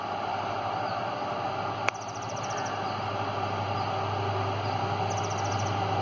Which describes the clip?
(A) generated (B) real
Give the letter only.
B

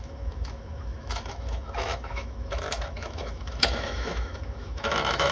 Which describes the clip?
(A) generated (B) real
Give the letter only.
A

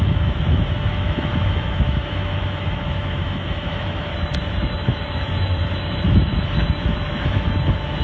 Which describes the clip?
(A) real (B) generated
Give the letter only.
B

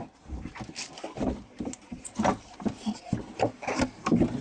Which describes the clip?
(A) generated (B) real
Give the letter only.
B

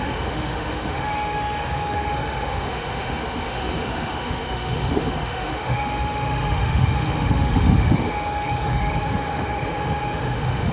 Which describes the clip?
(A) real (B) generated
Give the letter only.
B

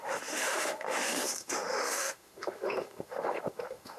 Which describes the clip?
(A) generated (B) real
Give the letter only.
A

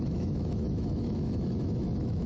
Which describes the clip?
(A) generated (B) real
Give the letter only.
A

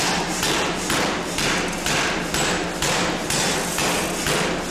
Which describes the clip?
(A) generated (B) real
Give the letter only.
B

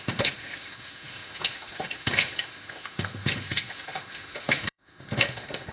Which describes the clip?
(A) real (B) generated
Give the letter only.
B